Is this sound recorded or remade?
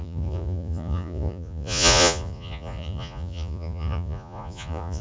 remade